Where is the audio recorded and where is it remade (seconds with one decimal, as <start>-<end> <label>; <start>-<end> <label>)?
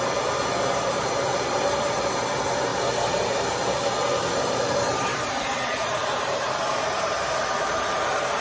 0.0-8.4 remade